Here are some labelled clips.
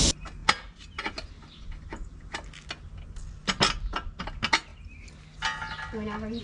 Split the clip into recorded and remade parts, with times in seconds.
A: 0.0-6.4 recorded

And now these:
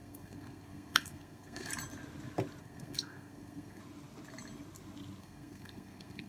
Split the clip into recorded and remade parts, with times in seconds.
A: 0.0-1.7 remade; 1.7-2.6 recorded; 2.6-3.8 remade; 3.8-5.2 recorded; 5.2-6.3 remade

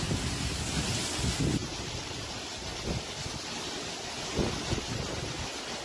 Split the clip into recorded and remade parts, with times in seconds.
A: 0.0-5.8 recorded

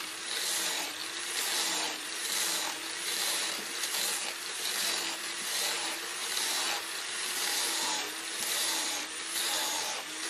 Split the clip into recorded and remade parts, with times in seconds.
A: 0.0-1.0 remade; 1.0-1.7 recorded; 1.7-10.3 remade

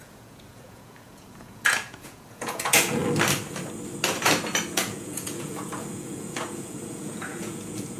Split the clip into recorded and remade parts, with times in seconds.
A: 0.0-3.0 remade; 3.0-4.6 recorded; 4.6-8.0 remade

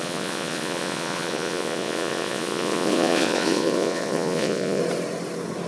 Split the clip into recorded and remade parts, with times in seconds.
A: 0.0-4.8 remade; 4.8-5.7 recorded

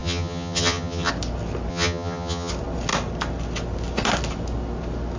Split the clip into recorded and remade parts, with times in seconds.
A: 0.0-1.1 remade; 1.1-1.7 recorded; 1.7-2.5 remade; 2.5-5.2 recorded

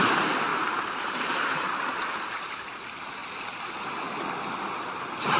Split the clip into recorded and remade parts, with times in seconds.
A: 0.0-0.5 recorded; 0.5-2.2 remade; 2.2-5.4 recorded